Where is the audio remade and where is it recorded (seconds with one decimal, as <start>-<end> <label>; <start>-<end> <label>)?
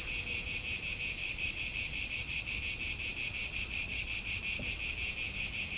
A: 0.0-1.2 recorded; 1.2-2.6 remade; 2.6-3.5 recorded; 3.5-4.4 remade; 4.4-5.8 recorded